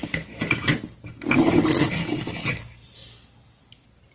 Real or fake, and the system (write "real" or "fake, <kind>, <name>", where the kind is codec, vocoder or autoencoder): real